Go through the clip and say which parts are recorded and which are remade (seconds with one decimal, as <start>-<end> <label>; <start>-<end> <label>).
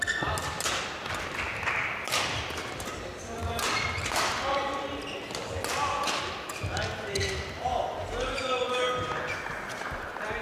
0.0-10.4 recorded